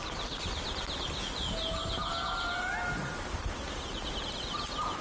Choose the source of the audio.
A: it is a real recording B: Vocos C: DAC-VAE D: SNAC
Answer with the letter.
A